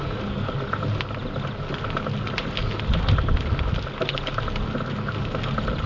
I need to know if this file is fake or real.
real